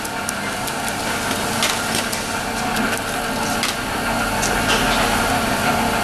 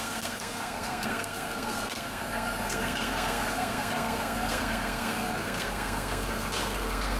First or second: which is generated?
second